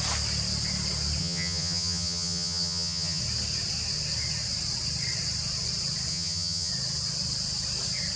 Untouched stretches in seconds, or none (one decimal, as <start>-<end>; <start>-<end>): 0.0-1.2; 3.2-6.1; 6.7-8.2